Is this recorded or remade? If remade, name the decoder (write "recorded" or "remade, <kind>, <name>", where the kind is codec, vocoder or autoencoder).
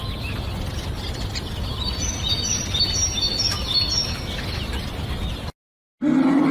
recorded